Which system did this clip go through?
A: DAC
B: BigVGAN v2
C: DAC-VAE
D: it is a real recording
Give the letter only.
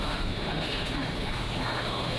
C